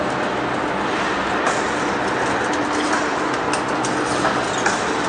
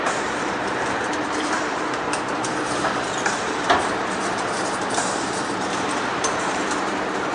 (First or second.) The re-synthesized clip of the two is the second